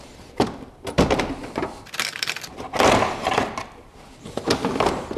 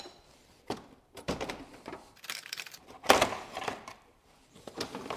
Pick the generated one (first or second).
second